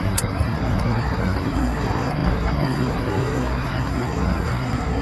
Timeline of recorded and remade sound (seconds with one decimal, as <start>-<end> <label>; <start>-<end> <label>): 0.0-5.0 remade